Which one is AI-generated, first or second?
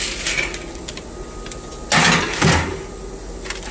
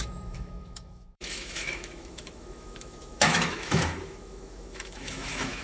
second